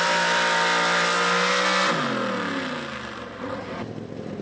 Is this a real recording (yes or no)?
yes